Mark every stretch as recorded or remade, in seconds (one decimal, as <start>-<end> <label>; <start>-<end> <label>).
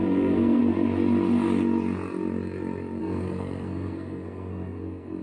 0.0-0.6 remade; 0.6-3.0 recorded; 3.0-5.2 remade